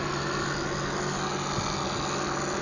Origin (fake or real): real